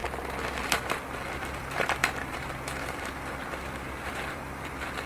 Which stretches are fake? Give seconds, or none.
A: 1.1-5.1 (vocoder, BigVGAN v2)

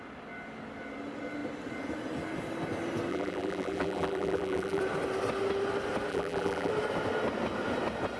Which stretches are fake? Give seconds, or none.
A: 3.1-4.8 (vocoder, BigVGAN v2); 6.1-6.7

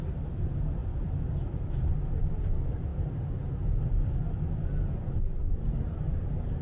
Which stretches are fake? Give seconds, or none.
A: none

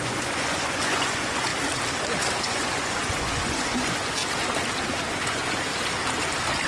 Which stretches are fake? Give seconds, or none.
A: 0.0-1.5 (vocoder, Vocos); 2.4-4.2; 5.1-5.7

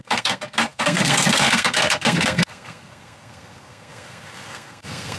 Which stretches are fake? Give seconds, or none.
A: 0.0-5.2 (codec, SNAC)